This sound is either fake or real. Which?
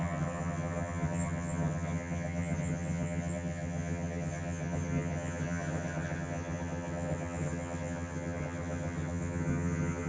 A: fake